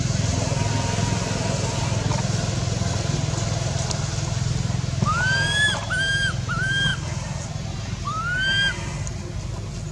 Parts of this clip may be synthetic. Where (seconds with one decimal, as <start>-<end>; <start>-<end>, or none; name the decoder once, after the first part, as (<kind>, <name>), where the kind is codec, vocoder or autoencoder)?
none